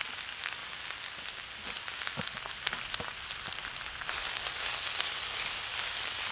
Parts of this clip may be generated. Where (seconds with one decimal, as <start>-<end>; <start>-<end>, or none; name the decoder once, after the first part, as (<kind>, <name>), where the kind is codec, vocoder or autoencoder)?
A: 0.6-4.4 (vocoder, BigVGAN v2)